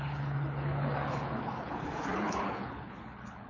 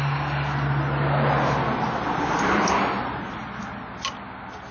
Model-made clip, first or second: first